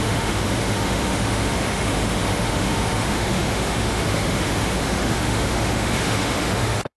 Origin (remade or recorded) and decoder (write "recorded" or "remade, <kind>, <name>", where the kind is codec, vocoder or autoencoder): remade, autoencoder, DAC-VAE